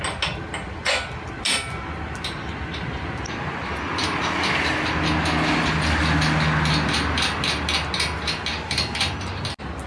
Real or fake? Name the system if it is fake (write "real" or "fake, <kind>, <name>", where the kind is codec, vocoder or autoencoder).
real